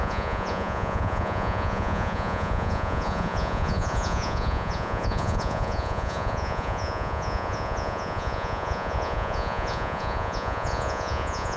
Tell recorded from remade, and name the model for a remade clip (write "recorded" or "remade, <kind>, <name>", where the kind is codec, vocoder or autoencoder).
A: remade, vocoder, Vocos